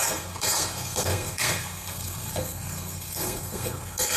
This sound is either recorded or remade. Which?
remade